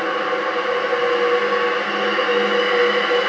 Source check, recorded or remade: recorded